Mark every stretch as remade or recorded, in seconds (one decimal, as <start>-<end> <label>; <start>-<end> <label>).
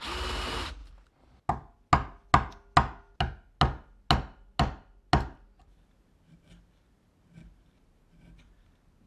0.0-9.1 recorded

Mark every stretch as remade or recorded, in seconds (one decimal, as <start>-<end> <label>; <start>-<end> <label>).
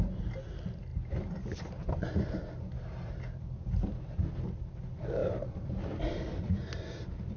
0.0-5.2 recorded; 5.2-6.0 remade; 6.0-7.4 recorded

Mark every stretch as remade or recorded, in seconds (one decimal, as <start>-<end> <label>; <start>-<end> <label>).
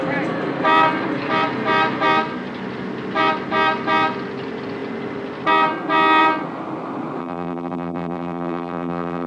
0.0-7.2 recorded; 7.2-9.3 remade